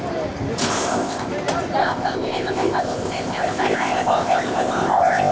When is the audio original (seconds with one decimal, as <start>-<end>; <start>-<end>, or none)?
0.0-0.6; 1.3-1.8